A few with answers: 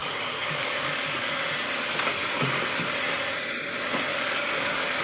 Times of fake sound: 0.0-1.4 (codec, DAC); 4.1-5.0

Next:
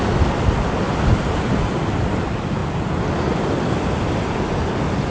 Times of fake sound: none

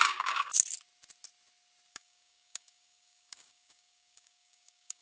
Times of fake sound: 0.0-0.5 (codec, DAC); 1.9-5.0

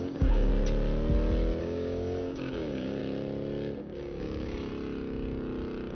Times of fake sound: 0.0-0.5 (codec, DAC); 1.6-3.0; 3.8-4.7

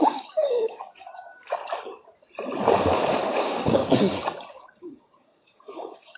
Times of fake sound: 0.0-1.6 (codec, DAC); 3.3-3.8; 4.5-6.2

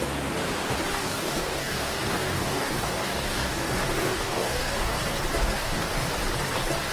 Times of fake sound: 0.9-5.0 (codec, DAC); 5.4-6.1

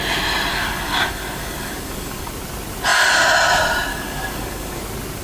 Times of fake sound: 0.5-2.3 (codec, DAC); 3.9-4.8

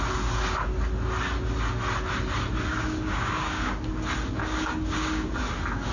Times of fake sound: 2.7-3.9 (codec, DAC); 4.4-5.3